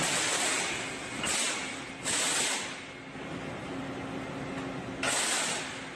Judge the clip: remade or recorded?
recorded